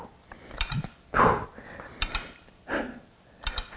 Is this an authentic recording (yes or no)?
no